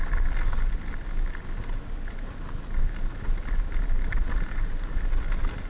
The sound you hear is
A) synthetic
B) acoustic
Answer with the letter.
B